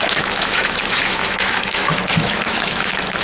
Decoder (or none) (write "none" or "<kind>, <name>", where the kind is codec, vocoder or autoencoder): autoencoder, DAC-VAE